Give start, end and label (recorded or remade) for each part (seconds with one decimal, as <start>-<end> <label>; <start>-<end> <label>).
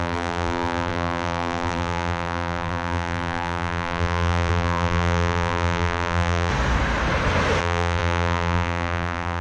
0.0-6.5 remade; 6.5-7.6 recorded; 7.6-9.4 remade